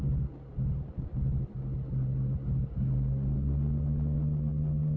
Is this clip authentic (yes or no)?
yes